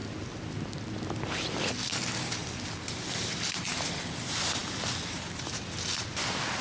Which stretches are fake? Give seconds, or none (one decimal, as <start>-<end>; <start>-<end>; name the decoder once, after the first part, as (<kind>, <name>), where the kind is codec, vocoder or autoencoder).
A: none